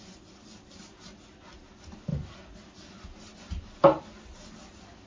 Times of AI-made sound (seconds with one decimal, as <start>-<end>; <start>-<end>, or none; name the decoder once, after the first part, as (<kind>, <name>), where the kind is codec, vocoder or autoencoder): none